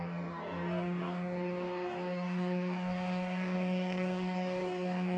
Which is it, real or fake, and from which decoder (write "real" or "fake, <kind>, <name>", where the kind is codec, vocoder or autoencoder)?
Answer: fake, codec, DAC